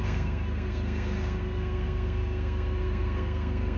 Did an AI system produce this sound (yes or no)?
yes